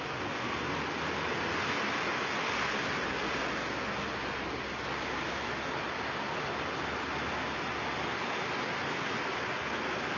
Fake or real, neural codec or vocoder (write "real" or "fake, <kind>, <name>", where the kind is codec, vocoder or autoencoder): real